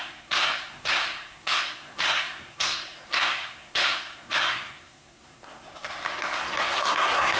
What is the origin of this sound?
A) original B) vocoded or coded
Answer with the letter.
B